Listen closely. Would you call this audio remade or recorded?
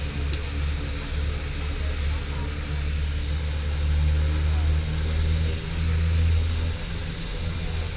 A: recorded